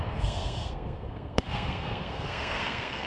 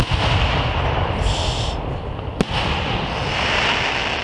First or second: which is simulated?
first